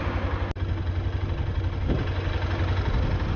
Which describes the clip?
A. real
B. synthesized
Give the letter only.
A